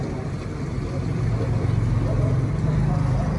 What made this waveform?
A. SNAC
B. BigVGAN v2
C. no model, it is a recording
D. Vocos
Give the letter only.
C